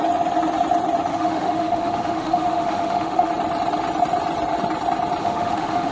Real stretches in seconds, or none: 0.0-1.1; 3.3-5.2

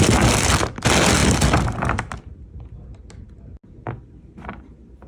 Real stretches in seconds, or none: 0.0-5.1

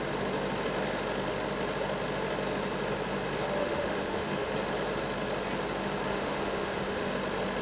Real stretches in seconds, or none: 0.0-3.6; 4.5-6.1; 7.1-7.6